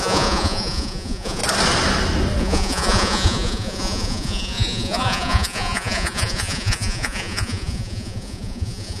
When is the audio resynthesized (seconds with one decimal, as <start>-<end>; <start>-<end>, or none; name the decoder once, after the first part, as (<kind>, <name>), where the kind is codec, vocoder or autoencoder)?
0.0-1.4 (vocoder, Vocos); 2.4-9.0